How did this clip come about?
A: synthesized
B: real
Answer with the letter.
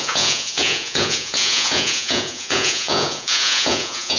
A